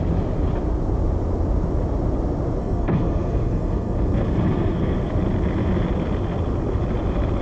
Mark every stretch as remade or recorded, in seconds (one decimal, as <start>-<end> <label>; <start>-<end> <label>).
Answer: 0.0-2.6 recorded; 2.6-5.1 remade; 5.1-7.4 recorded